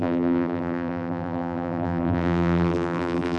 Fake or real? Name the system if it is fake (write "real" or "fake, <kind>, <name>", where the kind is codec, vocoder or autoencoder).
fake, vocoder, BigVGAN v2